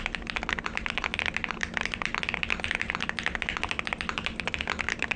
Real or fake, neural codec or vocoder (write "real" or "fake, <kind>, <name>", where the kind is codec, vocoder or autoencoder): real